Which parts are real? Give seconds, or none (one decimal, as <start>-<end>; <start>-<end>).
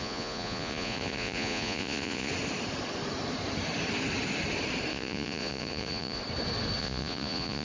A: 2.3-4.9; 6.2-6.8